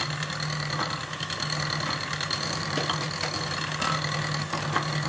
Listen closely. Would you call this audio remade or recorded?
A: recorded